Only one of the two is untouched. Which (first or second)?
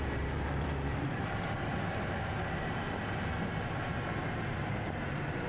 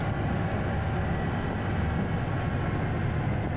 second